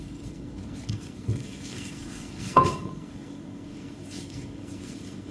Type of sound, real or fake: fake